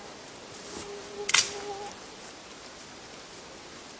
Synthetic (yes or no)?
no